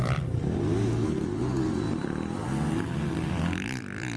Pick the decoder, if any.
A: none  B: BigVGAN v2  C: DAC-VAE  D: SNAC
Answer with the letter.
B